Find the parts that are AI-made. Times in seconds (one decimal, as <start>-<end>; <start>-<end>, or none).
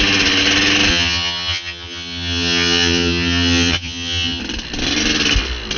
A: 0.9-4.4